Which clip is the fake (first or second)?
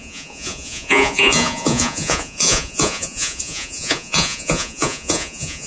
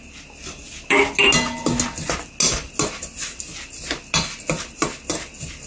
first